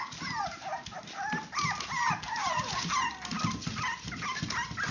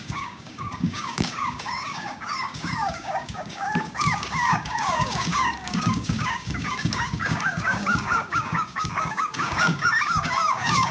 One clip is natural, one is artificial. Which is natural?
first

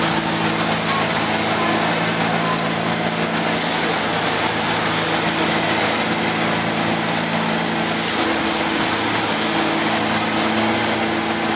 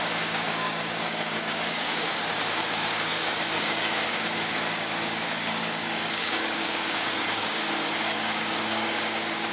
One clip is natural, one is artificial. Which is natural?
first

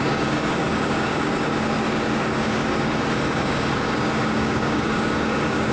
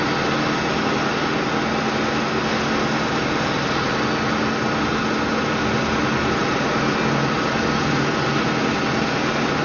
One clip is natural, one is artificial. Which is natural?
second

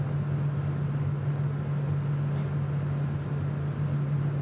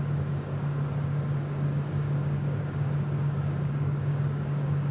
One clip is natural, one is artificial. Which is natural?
first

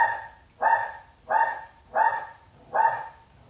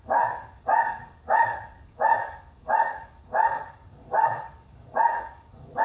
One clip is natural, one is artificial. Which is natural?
first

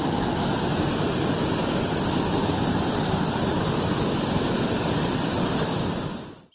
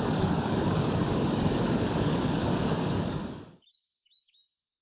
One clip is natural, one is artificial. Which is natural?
first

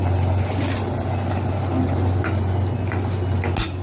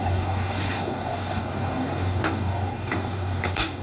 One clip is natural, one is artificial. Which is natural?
first